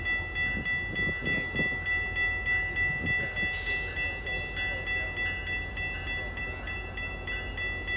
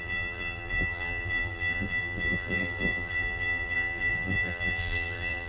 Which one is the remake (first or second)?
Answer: second